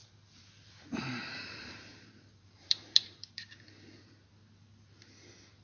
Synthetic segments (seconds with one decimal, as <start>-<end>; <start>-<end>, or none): 0.0-3.4